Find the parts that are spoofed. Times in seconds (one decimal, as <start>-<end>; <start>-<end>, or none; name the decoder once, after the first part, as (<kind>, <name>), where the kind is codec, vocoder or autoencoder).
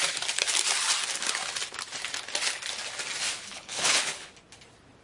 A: 3.5-4.3 (codec, HILCodec)